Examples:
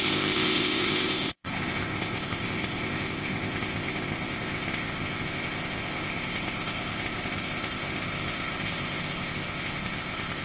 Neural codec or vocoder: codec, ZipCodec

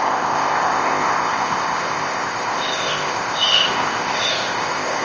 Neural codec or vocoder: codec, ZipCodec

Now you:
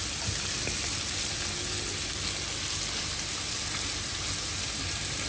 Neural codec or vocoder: none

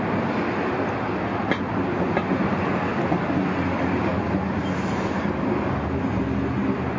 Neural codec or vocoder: none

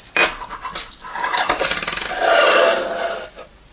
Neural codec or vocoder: none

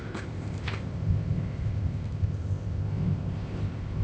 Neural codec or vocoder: codec, ZipCodec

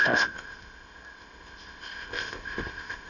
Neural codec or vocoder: codec, ZipCodec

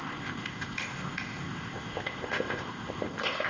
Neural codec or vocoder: codec, ZipCodec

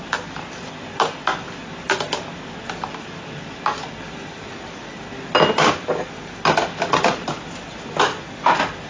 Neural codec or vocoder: none